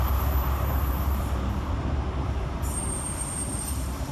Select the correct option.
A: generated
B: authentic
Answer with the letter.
A